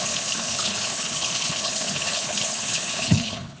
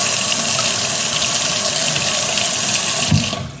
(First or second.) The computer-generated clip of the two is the first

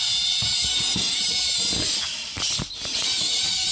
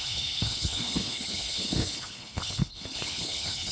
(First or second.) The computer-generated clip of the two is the second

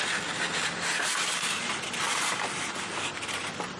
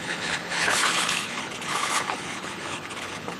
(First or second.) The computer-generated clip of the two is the second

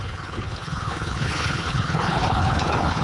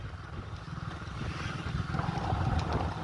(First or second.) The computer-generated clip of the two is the first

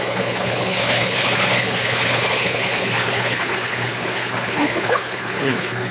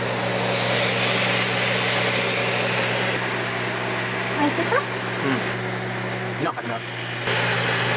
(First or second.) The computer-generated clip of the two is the first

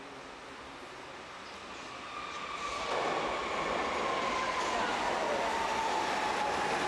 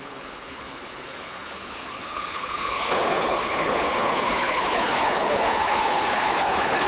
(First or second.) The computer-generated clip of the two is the second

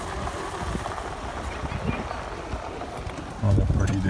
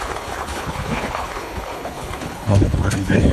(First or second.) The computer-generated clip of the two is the second